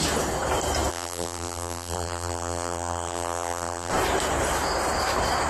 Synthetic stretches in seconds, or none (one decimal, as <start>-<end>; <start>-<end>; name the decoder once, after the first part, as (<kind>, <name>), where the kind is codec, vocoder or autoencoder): 0.9-3.9 (vocoder, BigVGAN v2)